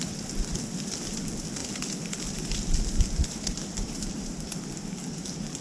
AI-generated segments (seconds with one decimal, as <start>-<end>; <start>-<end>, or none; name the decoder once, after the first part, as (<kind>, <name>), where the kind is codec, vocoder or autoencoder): none